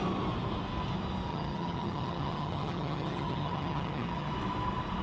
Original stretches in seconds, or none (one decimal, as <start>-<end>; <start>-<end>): 0.0-1.3; 4.3-5.0